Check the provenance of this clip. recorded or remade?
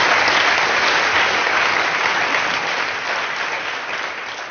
recorded